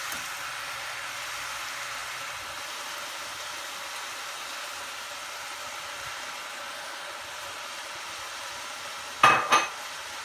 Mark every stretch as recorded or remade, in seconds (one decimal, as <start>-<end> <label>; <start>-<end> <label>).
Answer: 0.0-2.0 recorded; 2.0-5.0 remade; 5.0-6.4 recorded; 6.4-7.8 remade; 7.8-10.2 recorded

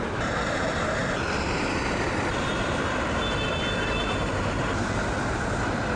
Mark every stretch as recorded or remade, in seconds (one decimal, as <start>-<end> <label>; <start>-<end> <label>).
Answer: 0.0-1.0 recorded; 1.0-4.6 remade; 4.6-6.0 recorded